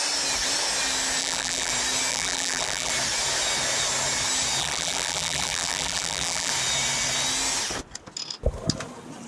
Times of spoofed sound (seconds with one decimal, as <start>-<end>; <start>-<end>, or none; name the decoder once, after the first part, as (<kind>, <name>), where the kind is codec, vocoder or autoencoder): 1.2-1.7 (vocoder, BigVGAN v2); 2.1-2.9; 4.6-6.5